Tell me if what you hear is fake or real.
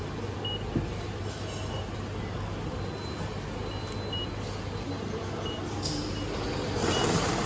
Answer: real